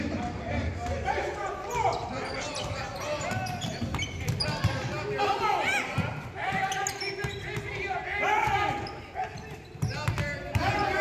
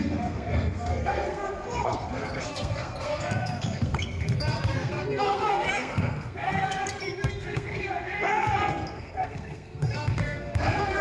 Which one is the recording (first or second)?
first